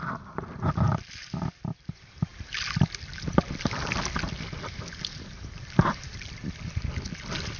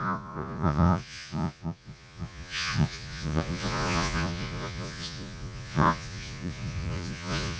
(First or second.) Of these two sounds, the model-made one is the second